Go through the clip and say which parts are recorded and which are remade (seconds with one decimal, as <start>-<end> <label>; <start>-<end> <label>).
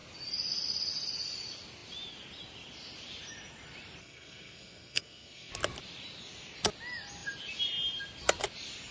0.0-4.0 recorded; 4.0-5.5 remade; 5.5-8.9 recorded